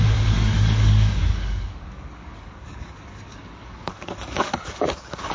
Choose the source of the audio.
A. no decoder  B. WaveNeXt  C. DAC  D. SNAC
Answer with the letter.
C